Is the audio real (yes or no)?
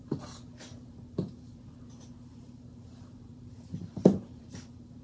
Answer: no